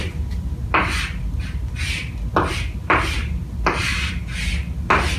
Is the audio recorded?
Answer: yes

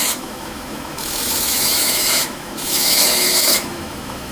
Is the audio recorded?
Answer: no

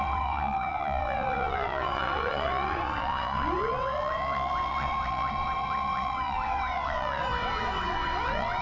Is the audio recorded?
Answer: no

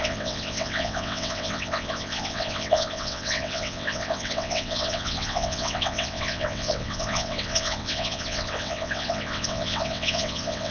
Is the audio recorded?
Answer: no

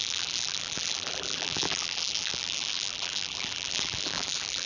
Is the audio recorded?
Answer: no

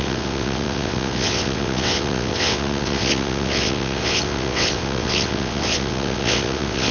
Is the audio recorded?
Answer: no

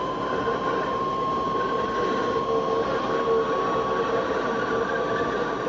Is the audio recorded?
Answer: yes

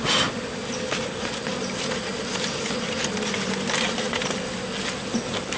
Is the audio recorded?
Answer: yes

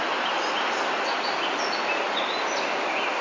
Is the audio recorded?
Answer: yes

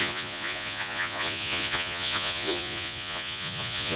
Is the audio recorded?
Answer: no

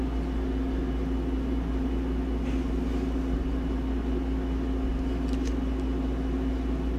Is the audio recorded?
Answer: yes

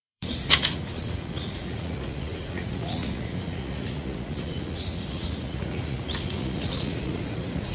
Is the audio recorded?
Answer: no